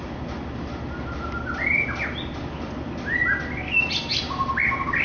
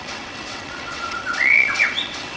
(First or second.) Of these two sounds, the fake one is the second